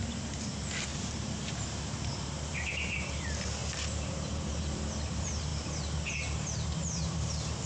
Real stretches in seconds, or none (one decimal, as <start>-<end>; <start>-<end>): 0.0-0.9; 3.2-3.6; 4.5-7.7